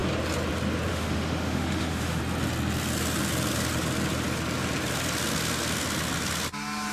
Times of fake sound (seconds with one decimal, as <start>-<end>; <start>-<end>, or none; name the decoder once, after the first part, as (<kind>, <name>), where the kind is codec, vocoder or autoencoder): 0.9-2.2 (autoencoder, DAC-VAE)